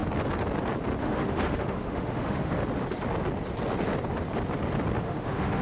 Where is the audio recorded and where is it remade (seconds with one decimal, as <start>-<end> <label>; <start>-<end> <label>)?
0.0-1.0 recorded; 1.0-2.6 remade; 2.6-5.0 recorded; 5.0-5.6 remade